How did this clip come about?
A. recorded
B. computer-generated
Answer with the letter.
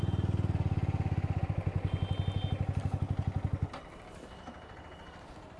A